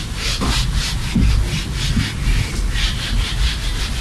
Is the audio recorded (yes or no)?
yes